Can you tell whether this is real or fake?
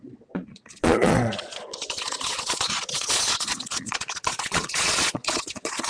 fake